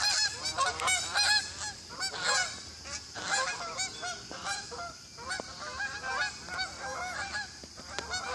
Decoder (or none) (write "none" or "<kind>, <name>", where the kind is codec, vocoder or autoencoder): none